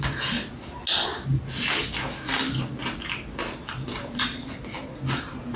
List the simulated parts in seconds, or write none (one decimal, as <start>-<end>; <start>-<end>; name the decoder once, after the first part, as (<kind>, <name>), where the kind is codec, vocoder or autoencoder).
0.9-1.4 (vocoder, BigVGAN v2)